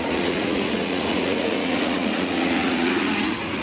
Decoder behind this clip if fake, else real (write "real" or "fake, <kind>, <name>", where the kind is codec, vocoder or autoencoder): fake, vocoder, Vocos